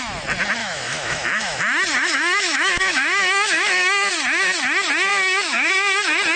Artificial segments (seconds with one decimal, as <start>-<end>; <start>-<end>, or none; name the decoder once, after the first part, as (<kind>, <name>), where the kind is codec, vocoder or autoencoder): 0.6-1.6 (autoencoder, DAC-VAE); 2.0-4.1; 5.1-5.7